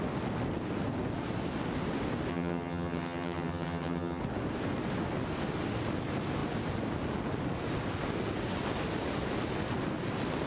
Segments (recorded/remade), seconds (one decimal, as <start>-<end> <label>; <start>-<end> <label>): 0.0-2.3 recorded; 2.3-4.2 remade; 4.2-10.5 recorded